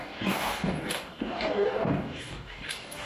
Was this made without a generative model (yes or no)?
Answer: no